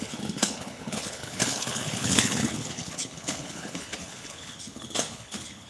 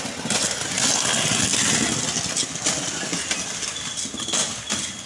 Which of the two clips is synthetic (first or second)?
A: first